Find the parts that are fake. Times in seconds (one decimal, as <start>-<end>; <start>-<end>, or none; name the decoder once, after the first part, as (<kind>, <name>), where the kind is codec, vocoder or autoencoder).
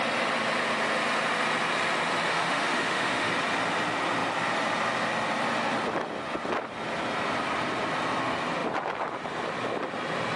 2.3-3.3 (autoencoder, DAC-VAE)